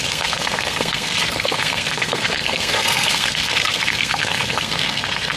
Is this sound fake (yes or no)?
yes